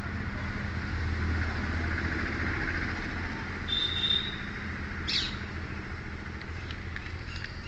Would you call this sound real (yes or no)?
yes